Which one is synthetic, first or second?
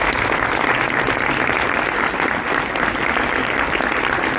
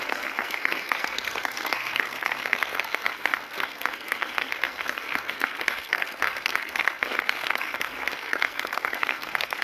second